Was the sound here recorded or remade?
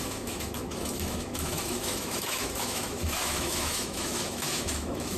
remade